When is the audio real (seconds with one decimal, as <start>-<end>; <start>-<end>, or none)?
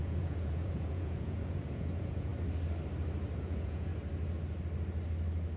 2.3-3.4; 3.9-5.6